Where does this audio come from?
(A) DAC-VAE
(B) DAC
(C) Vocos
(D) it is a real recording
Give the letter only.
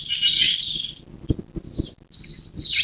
D